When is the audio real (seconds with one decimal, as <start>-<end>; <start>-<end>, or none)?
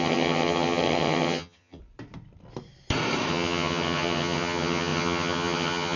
1.8-3.3